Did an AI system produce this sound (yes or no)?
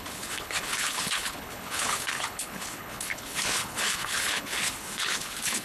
yes